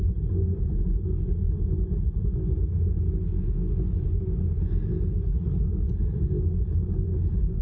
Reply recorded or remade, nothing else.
recorded